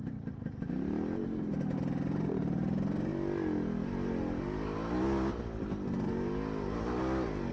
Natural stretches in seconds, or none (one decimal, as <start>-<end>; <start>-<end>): 0.0-7.5